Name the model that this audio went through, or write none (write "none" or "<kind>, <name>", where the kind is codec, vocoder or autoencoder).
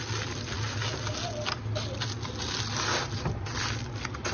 none